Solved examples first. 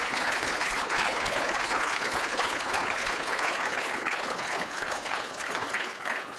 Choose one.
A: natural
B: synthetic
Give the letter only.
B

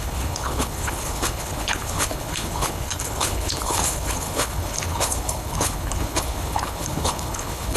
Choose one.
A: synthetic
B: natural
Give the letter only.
A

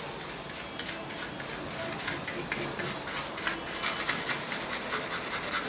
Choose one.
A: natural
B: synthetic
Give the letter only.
A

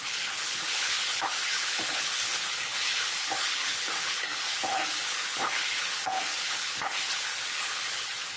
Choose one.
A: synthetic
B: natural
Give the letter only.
A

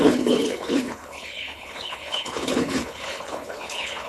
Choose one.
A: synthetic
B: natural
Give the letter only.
A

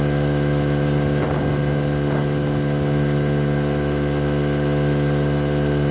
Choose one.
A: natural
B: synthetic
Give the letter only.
A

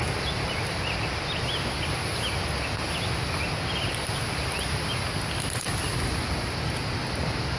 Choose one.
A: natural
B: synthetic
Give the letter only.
A